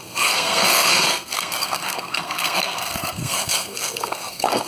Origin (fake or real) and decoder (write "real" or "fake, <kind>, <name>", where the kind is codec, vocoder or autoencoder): fake, codec, SNAC